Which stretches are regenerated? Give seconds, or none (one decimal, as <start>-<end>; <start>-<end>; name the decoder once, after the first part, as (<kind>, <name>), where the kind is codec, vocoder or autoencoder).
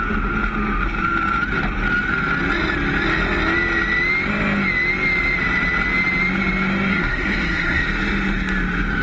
6.9-7.8 (codec, SNAC)